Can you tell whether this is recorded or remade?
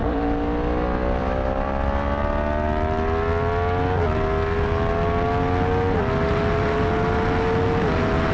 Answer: recorded